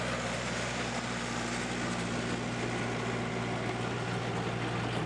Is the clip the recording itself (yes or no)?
yes